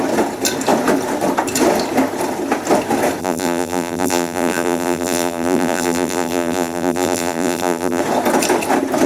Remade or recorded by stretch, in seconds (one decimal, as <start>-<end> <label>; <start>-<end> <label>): 0.0-3.2 recorded; 3.2-8.0 remade; 8.0-9.1 recorded